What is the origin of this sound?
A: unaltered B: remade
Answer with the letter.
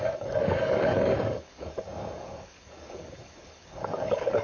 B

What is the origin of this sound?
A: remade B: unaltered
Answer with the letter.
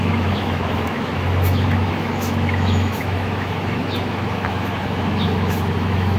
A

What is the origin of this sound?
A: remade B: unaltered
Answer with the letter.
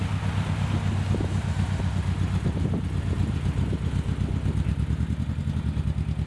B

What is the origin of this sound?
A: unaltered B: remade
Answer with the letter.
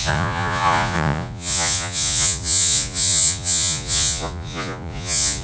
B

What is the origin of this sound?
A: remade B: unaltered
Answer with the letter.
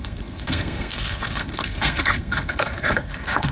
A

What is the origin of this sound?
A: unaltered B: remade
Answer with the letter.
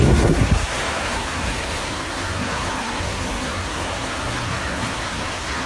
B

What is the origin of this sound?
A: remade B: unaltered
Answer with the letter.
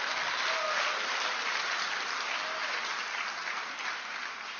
B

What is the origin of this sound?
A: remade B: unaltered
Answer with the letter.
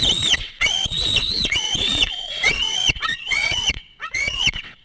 A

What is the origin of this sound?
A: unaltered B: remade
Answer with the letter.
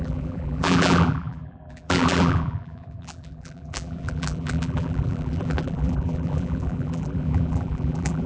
B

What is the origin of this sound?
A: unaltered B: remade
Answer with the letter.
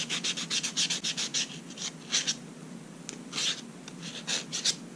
A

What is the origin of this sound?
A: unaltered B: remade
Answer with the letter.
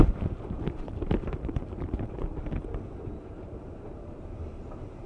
B